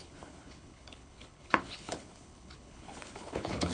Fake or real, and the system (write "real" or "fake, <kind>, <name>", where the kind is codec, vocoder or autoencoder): fake, codec, HILCodec